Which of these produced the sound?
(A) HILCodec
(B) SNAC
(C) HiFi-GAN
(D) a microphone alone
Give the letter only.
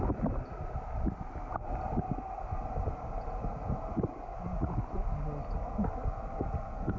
D